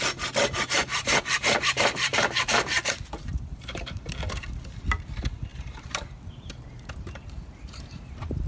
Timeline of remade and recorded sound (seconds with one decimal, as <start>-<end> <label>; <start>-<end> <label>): 0.0-0.8 recorded; 0.8-4.1 remade; 4.1-5.5 recorded; 5.5-8.5 remade